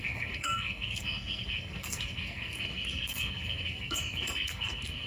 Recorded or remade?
remade